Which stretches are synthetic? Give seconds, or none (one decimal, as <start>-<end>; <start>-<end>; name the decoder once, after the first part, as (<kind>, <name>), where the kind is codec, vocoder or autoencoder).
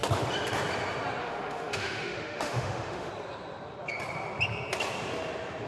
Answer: 1.2-3.1 (autoencoder, DAC-VAE)